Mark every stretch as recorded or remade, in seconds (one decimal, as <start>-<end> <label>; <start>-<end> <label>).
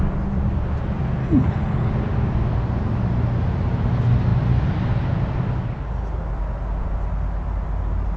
0.0-1.2 recorded; 1.2-1.9 remade; 1.9-8.2 recorded